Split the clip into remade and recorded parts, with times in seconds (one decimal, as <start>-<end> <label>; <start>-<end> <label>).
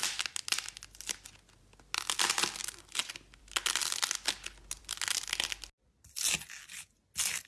0.0-7.5 recorded